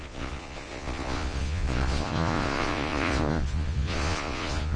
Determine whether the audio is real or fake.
fake